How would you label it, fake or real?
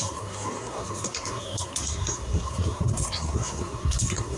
fake